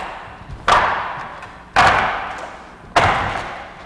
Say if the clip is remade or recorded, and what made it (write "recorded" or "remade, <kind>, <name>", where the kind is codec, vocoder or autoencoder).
recorded